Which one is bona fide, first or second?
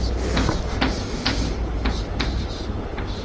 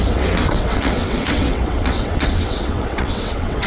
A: first